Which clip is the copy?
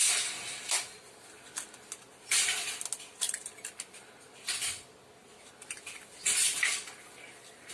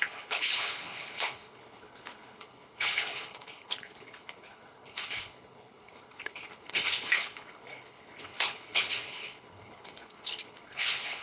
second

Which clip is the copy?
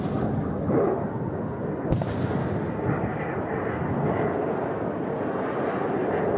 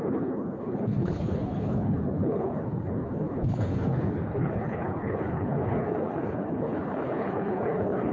second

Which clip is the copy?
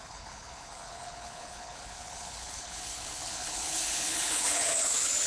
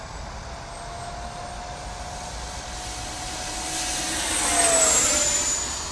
first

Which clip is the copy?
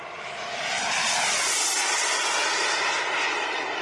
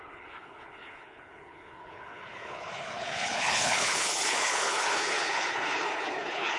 second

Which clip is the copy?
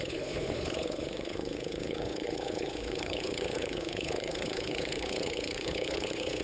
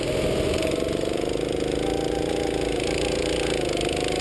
first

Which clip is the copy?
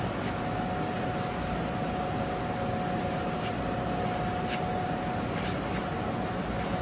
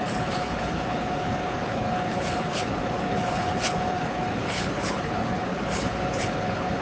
second